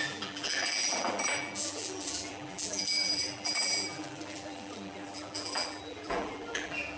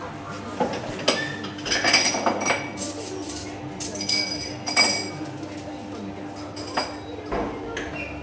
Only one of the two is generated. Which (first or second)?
first